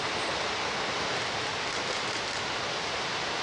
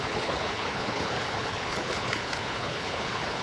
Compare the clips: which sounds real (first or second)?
first